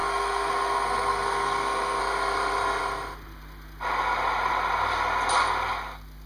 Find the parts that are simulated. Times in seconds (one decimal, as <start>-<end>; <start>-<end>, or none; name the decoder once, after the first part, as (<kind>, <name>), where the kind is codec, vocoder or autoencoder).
0.0-2.0 (codec, SNAC)